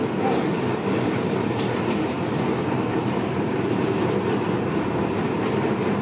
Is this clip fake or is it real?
fake